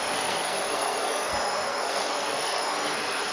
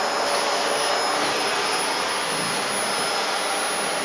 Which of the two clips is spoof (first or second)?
first